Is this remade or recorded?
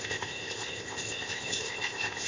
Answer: remade